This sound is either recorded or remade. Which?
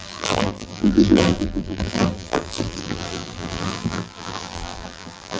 remade